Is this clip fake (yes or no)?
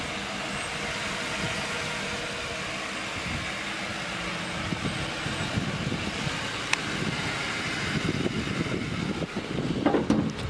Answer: no